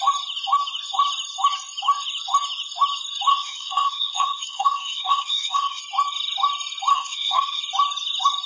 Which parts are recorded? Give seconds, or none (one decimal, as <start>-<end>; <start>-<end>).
0.0-3.3; 5.8-6.9; 7.6-8.5